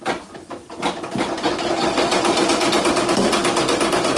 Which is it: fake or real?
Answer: real